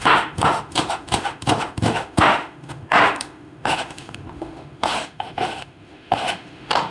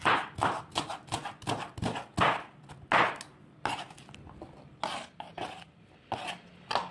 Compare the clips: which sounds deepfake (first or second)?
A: first